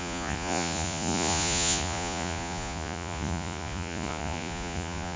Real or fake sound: fake